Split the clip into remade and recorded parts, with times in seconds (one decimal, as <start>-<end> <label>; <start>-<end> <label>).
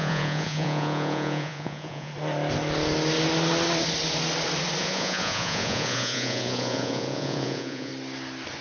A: 0.0-2.1 remade; 2.1-4.8 recorded; 4.8-7.9 remade; 7.9-8.6 recorded